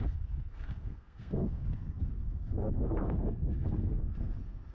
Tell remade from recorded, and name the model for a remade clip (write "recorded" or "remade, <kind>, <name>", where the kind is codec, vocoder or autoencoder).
remade, codec, SNAC